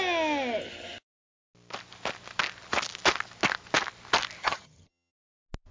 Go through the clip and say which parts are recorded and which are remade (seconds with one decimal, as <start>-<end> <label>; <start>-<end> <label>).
0.0-4.4 recorded; 4.4-5.1 remade; 5.1-5.7 recorded